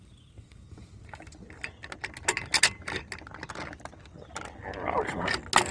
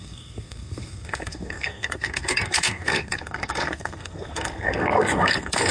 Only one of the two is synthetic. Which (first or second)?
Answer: second